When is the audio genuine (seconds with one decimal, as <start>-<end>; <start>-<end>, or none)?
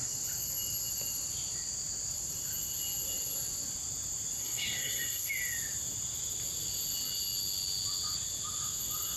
0.0-4.4; 5.3-9.2